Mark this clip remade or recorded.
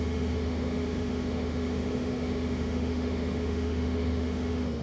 remade